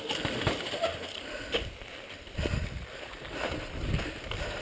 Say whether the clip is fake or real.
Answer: fake